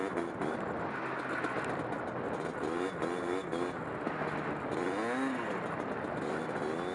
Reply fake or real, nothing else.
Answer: real